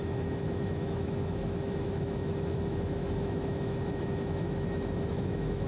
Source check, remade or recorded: remade